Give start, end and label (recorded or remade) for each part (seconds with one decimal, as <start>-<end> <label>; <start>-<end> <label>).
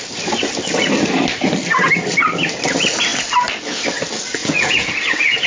0.0-4.4 recorded; 4.4-4.9 remade; 4.9-5.5 recorded